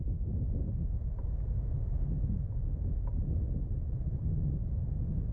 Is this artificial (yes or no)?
no